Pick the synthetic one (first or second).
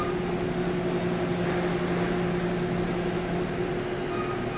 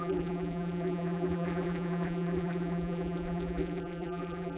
second